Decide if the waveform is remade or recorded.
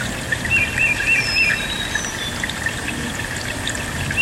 recorded